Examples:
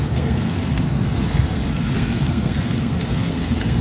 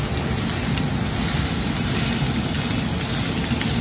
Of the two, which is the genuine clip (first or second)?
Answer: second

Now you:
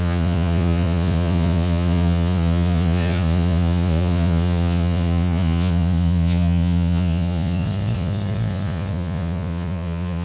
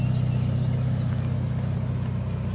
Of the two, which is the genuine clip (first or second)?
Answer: second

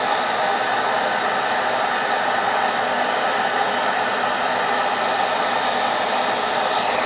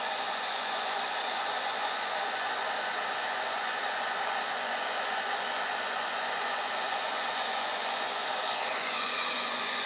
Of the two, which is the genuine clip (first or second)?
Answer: first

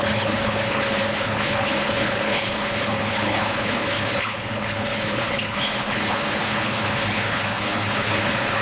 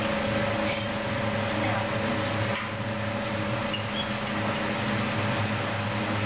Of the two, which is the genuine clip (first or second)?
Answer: second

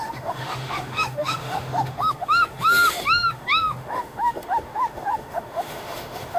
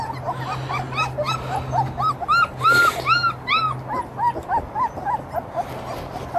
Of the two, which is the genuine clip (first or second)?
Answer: second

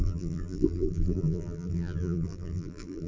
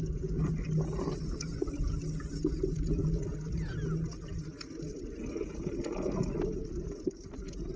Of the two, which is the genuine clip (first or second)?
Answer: second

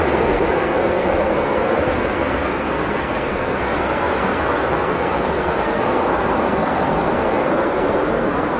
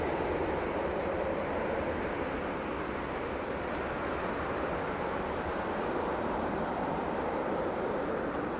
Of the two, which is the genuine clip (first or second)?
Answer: second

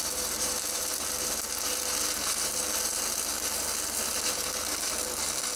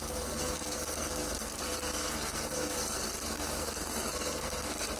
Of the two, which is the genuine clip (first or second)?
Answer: first